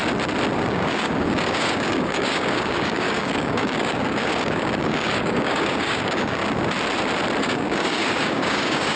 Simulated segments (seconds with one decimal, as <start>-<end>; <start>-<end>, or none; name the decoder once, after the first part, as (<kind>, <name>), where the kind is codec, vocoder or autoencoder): 0.7-6.4 (codec, DAC); 7.4-9.0